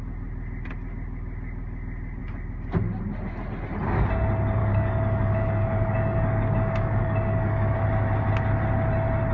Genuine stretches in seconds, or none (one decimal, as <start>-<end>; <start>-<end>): 0.0-4.6; 7.8-9.3

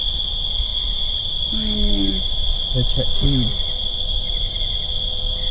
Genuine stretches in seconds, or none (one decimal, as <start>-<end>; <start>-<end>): 0.0-5.5

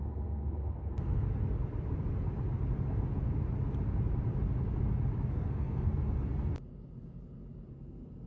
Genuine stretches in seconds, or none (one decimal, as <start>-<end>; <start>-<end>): 1.3-5.3; 5.9-7.7

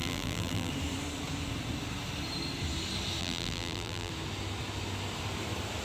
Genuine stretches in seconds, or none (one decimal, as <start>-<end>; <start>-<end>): 0.7-3.2; 4.1-5.8

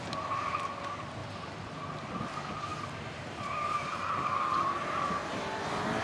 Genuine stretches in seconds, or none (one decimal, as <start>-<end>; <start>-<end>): 0.0-1.2; 1.7-2.7; 4.3-6.0

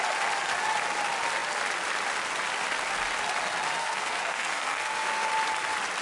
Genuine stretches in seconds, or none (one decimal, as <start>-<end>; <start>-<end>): 0.0-3.8; 5.3-6.0

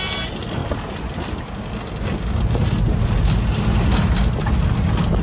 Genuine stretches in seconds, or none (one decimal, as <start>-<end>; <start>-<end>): 0.0-5.2

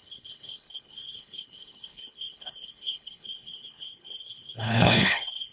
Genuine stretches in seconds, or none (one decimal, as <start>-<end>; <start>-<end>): none